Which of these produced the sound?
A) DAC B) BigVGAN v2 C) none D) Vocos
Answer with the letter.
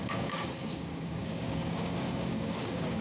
A